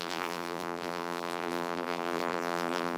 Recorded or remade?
remade